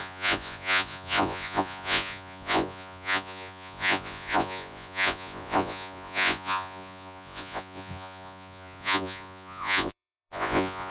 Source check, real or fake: fake